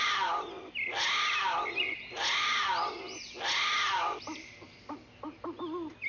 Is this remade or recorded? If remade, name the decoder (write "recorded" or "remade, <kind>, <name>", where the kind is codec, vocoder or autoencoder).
recorded